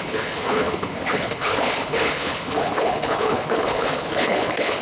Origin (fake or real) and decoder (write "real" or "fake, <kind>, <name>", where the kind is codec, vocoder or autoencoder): fake, codec, HILCodec